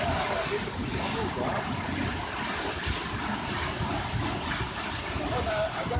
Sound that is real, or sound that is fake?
real